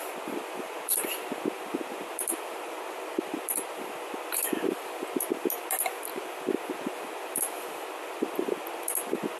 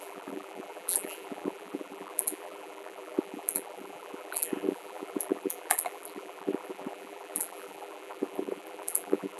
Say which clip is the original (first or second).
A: first